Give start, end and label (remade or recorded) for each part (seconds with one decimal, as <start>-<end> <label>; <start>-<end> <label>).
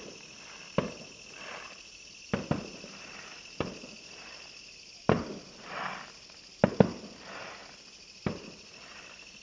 0.0-9.4 recorded